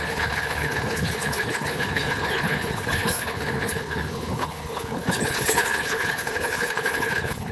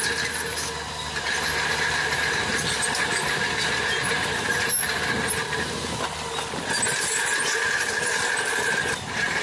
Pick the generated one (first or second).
first